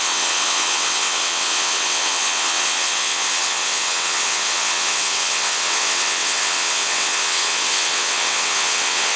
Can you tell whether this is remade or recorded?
remade